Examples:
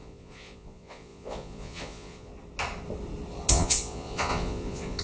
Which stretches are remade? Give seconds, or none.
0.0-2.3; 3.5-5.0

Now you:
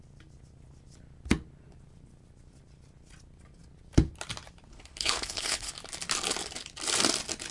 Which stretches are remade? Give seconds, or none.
4.7-5.7

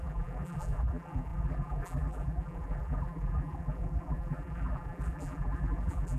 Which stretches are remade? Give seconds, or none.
0.0-6.2

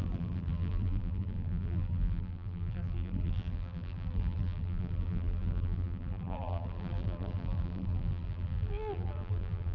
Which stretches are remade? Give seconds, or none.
0.0-9.7

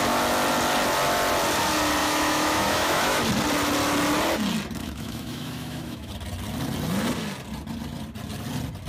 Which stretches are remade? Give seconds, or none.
2.0-3.2; 4.8-6.1

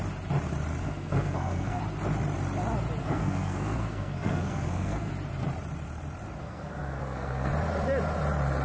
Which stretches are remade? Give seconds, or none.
0.8-1.8; 3.0-5.1; 6.4-7.5

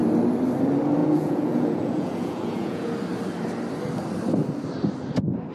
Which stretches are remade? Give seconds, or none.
1.0-2.9